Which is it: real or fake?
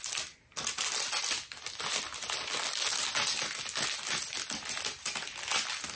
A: real